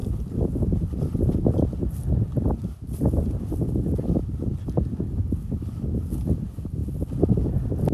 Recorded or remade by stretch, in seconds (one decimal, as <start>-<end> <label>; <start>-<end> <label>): 0.0-7.9 recorded